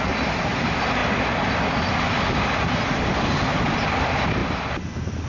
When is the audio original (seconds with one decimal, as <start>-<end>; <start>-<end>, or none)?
0.0-5.3